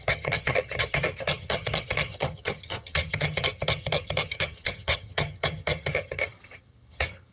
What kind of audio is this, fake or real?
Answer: fake